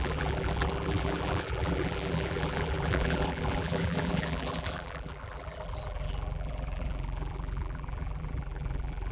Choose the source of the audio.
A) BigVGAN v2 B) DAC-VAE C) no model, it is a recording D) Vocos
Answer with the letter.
A